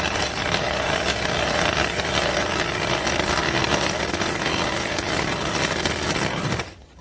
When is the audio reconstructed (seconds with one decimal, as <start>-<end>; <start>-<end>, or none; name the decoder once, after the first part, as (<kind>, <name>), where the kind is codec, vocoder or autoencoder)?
3.6-7.0 (vocoder, BigVGAN v2)